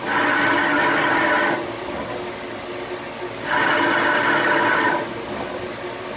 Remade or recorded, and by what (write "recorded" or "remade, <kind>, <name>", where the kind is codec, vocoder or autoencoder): recorded